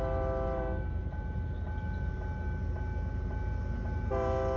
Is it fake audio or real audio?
real